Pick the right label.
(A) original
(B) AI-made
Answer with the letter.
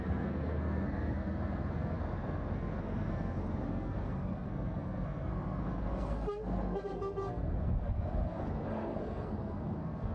B